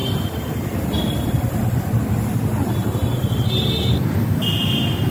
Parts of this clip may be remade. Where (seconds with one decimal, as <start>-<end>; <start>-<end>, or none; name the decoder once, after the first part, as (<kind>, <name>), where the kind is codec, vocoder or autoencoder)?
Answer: none